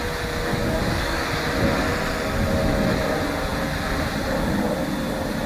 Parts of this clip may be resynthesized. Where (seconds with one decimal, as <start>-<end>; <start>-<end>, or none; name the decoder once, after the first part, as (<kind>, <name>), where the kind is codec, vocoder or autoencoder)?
0.5-1.2 (codec, DAC)